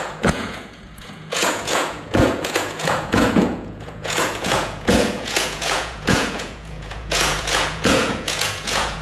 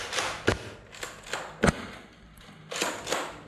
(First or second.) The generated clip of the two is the first